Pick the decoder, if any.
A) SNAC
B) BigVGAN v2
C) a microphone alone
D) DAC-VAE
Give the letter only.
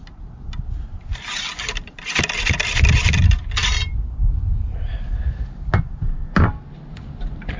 C